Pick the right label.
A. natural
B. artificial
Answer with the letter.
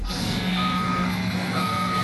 B